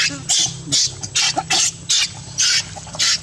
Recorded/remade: recorded